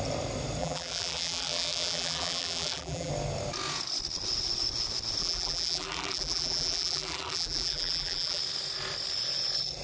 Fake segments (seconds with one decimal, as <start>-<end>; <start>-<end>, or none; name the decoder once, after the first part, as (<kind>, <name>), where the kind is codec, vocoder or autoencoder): 0.6-3.1 (vocoder, BigVGAN v2); 5.2-8.4